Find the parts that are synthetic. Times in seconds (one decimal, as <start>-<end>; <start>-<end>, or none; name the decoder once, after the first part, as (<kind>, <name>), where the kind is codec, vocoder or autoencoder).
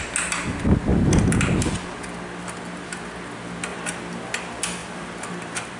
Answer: 4.8-5.8 (vocoder, BigVGAN v2)